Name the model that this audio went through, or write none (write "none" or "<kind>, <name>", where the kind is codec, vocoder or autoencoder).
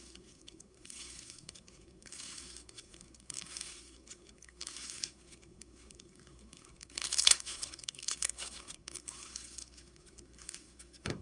codec, SNAC